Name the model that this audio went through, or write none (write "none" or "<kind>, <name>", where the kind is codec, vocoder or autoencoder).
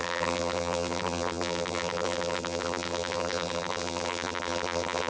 vocoder, BigVGAN v2